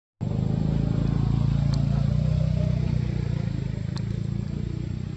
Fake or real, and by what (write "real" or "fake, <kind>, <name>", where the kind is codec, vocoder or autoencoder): real